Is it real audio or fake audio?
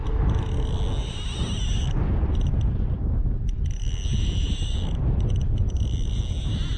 real